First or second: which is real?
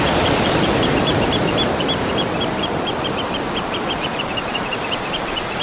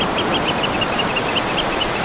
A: second